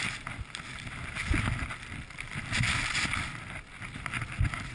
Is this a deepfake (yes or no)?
no